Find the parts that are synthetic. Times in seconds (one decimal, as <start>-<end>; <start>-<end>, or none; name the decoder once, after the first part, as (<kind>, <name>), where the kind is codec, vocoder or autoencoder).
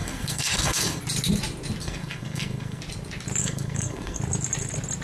0.0-1.0 (codec, SNAC); 1.8-2.8; 3.4-4.2